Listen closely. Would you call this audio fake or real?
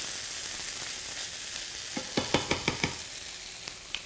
real